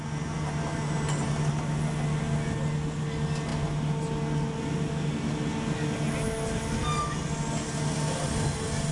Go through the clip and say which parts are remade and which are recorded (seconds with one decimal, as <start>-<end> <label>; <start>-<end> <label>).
0.0-8.9 recorded